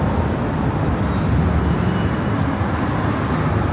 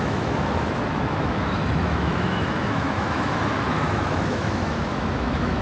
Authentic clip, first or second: first